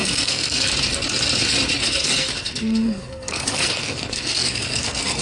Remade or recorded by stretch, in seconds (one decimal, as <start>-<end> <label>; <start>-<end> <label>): 0.0-0.7 remade; 0.7-1.8 recorded; 1.8-5.2 remade